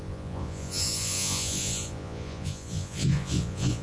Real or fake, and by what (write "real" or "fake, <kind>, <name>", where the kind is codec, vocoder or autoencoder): fake, vocoder, Vocos